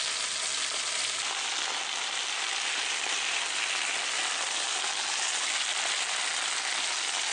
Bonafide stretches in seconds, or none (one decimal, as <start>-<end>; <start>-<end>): 0.0-0.5; 1.3-7.3